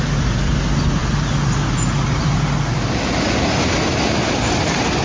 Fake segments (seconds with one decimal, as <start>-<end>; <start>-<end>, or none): none